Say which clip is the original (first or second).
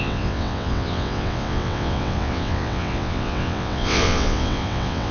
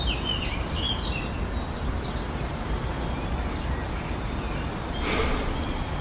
second